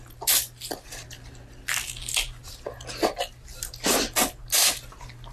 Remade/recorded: recorded